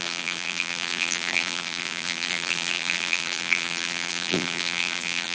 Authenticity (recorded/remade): remade